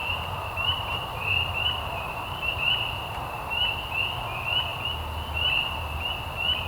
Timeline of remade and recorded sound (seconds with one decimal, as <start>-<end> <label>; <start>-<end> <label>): 0.0-3.7 remade; 3.7-6.7 recorded

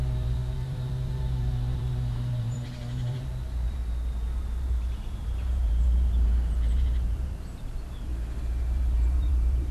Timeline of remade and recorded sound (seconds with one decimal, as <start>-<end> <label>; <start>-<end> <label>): 0.0-3.8 remade; 3.8-4.4 recorded; 4.4-8.1 remade; 8.1-8.6 recorded; 8.6-9.7 remade

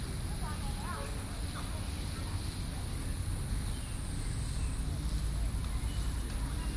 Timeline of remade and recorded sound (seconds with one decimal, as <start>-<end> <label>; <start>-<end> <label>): 0.0-5.6 recorded; 5.6-6.8 remade

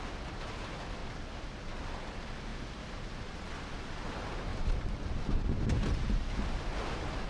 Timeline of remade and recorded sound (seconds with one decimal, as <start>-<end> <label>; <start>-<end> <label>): 0.0-1.0 recorded; 1.0-1.5 remade; 1.5-2.5 recorded; 2.5-3.5 remade; 3.5-4.5 recorded; 4.5-5.3 remade; 5.3-7.3 recorded

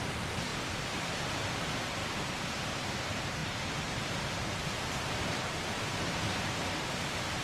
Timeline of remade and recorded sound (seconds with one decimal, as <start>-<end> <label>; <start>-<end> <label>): 0.0-0.5 recorded; 0.5-1.1 remade; 1.1-2.0 recorded; 2.0-2.6 remade; 2.6-3.4 recorded; 3.4-3.9 remade; 3.9-4.6 recorded; 4.6-6.3 remade; 6.3-7.4 recorded

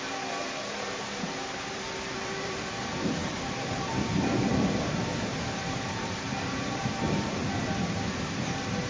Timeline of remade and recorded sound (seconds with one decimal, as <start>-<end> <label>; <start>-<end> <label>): 0.0-7.4 remade; 7.4-8.9 recorded